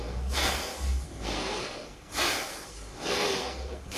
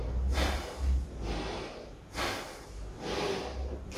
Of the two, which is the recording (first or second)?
second